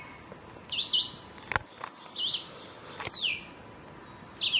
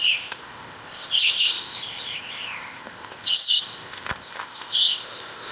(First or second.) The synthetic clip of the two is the second